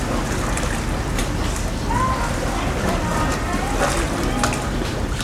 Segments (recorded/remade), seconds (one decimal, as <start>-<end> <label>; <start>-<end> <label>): 0.0-5.2 recorded